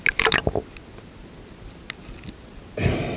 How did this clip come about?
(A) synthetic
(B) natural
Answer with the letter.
B